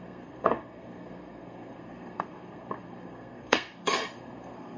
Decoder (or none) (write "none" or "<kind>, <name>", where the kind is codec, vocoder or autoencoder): codec, SNAC